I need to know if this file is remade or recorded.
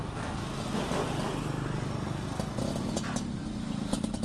recorded